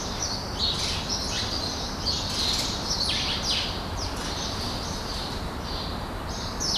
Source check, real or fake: real